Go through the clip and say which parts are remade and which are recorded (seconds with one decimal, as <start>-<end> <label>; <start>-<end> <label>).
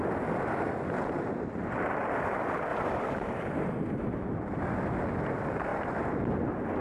0.0-2.7 recorded; 2.7-4.6 remade; 4.6-6.8 recorded